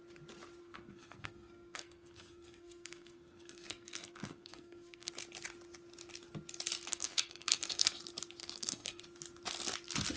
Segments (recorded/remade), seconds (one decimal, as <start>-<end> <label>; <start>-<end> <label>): 0.0-0.6 recorded; 0.6-5.1 remade; 5.1-6.9 recorded; 6.9-8.0 remade; 8.0-8.4 recorded; 8.4-9.0 remade; 9.0-10.2 recorded